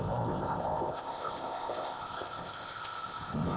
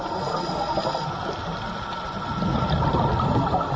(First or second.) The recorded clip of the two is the second